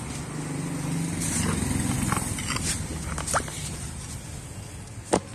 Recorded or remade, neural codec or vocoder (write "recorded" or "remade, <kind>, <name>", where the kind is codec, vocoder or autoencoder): recorded